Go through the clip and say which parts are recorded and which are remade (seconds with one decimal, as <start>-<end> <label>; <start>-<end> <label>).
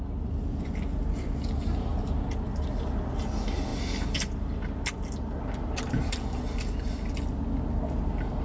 0.0-8.4 recorded